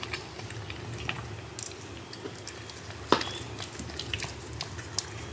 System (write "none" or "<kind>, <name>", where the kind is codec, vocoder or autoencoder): none